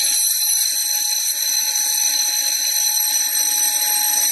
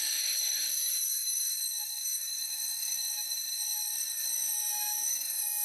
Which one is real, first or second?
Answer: first